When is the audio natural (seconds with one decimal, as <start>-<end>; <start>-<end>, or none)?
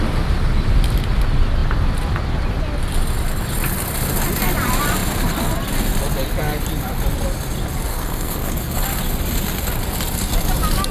0.0-7.9; 8.8-10.9